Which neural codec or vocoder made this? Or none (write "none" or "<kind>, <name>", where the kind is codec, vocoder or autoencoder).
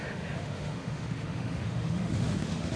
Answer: autoencoder, DAC-VAE